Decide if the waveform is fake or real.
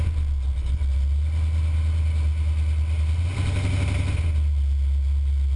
real